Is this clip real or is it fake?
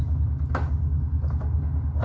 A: real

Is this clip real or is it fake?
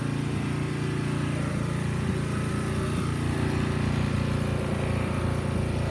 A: real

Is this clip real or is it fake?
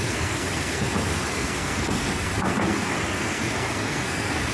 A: fake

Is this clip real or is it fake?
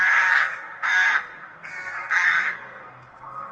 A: fake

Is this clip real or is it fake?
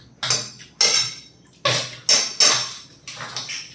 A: real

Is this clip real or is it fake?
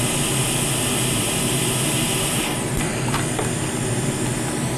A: real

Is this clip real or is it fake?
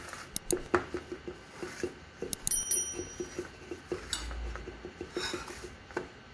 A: real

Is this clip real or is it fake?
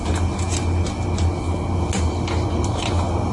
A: real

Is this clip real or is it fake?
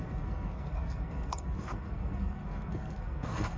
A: fake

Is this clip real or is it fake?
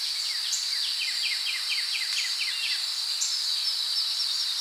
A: real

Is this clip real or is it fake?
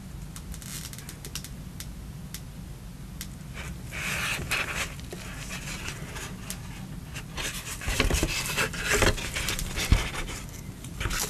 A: real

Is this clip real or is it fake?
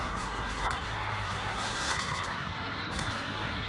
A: fake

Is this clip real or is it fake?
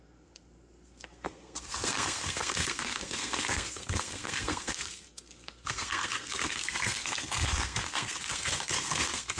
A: fake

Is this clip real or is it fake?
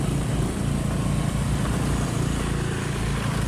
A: real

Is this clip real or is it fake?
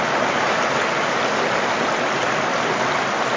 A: real